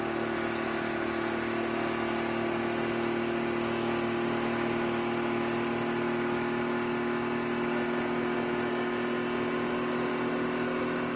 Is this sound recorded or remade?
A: recorded